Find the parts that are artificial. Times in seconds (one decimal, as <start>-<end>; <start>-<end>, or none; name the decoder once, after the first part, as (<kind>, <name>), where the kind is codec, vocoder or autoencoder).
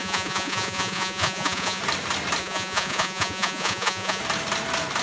0.0-1.8 (vocoder, Vocos); 2.4-4.2